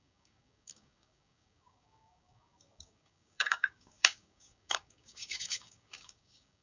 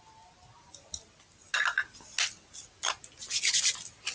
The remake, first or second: first